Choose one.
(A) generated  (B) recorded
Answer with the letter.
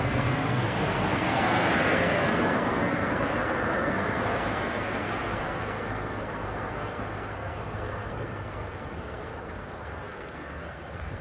A